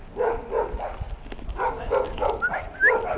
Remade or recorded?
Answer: recorded